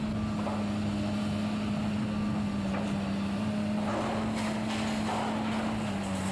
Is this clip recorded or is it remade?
recorded